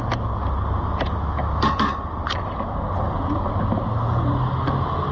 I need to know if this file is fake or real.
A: real